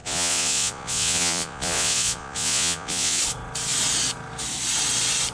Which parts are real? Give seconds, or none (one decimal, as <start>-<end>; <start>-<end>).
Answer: 3.2-5.3